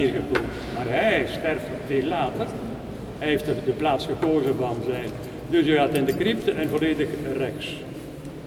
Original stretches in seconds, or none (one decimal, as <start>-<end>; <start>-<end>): 2.6-8.5